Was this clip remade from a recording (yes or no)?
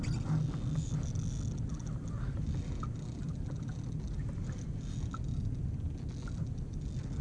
no